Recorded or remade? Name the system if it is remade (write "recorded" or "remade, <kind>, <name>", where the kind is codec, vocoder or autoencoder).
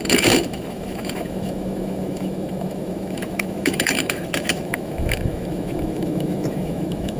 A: remade, autoencoder, DAC-VAE